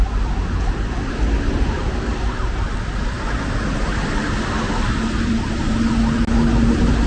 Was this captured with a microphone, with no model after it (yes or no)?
yes